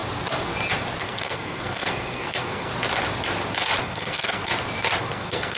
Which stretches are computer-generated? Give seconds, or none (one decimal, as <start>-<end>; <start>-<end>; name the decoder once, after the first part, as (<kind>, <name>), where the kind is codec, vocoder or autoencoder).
1.0-2.7 (codec, SNAC); 3.8-4.5; 5.0-5.6